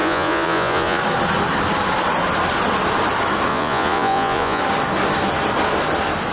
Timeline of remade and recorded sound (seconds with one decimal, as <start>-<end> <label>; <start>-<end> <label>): 0.0-1.0 remade; 1.0-3.5 recorded; 3.5-4.6 remade; 4.6-6.3 recorded

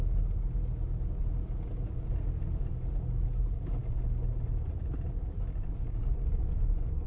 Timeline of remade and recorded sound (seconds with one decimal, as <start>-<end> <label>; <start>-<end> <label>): 0.0-6.0 recorded; 6.0-7.1 remade

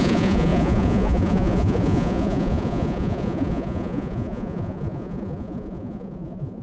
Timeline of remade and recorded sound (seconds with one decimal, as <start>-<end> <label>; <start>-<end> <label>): 0.0-6.6 remade